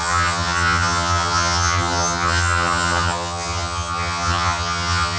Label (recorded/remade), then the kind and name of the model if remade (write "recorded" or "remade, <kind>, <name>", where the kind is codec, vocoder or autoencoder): remade, vocoder, HiFi-GAN